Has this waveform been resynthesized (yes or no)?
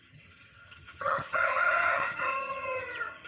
yes